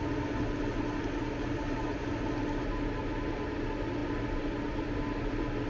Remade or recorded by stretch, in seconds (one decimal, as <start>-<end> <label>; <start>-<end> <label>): 0.0-5.7 recorded